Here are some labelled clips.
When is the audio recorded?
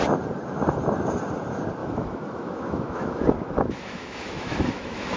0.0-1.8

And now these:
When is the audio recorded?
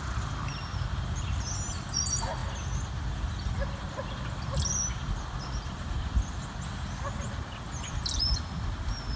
0.0-9.2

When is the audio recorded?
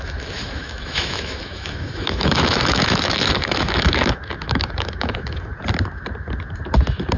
5.5-7.2